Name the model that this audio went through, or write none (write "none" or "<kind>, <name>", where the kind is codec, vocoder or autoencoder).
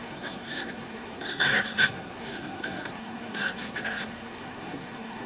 codec, SNAC